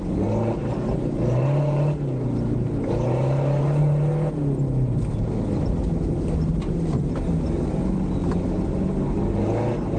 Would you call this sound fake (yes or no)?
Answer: no